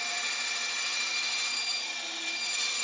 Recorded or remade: remade